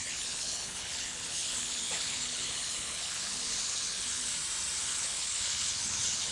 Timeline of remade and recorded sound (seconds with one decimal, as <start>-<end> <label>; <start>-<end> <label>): 0.0-4.3 remade; 4.3-4.8 recorded; 4.8-6.3 remade